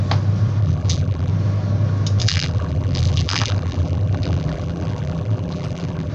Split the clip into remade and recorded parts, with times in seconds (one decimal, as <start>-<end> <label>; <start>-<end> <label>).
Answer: 0.0-0.6 recorded; 0.6-1.3 remade; 1.3-2.2 recorded; 2.2-6.1 remade